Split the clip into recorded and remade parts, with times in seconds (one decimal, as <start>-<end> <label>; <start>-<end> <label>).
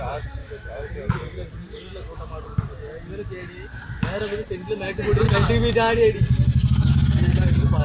0.0-0.4 recorded; 0.4-0.9 remade; 0.9-7.8 recorded